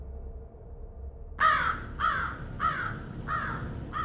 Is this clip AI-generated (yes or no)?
no